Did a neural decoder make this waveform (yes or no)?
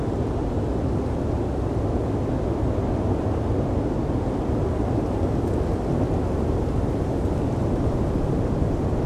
no